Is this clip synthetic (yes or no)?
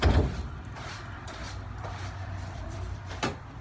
yes